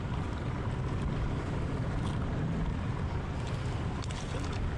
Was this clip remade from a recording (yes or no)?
no